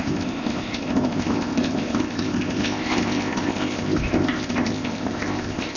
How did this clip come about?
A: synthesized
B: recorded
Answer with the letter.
A